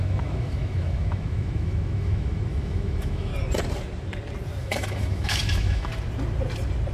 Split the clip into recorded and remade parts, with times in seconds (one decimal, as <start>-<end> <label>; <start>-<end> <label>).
0.0-3.3 remade; 3.3-4.6 recorded; 4.6-5.9 remade; 5.9-6.9 recorded